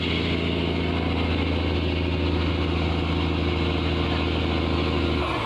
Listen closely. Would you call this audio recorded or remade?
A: recorded